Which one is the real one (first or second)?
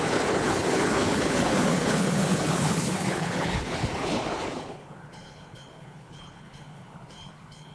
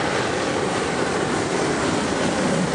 second